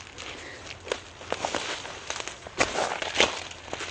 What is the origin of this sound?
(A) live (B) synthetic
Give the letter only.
A